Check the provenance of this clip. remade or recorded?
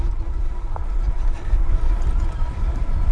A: recorded